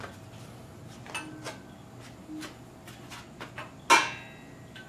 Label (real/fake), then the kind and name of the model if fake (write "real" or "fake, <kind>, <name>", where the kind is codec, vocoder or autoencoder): real